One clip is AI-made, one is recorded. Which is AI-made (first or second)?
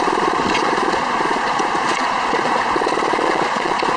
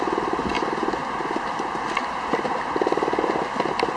first